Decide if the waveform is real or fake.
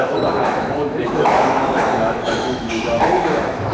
fake